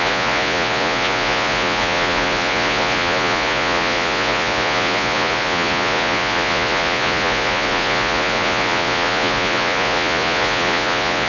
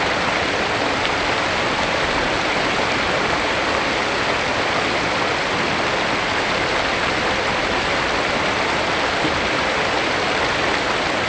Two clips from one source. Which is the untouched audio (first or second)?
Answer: second